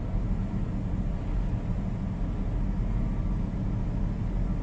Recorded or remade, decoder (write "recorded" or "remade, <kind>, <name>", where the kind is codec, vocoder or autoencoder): recorded